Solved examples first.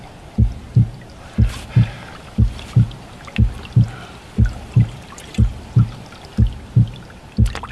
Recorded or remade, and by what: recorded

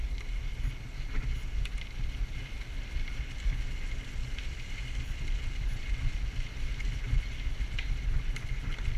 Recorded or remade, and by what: recorded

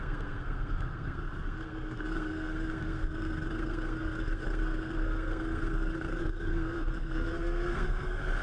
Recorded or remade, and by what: remade, codec, SNAC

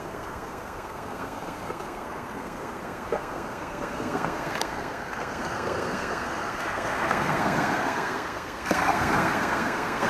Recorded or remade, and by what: remade, codec, SNAC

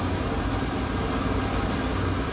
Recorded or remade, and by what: recorded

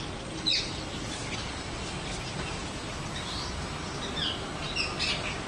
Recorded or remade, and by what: recorded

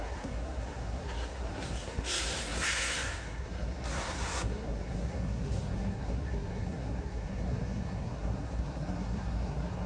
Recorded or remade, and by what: remade, codec, SNAC